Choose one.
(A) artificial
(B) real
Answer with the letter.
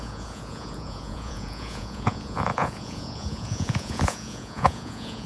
A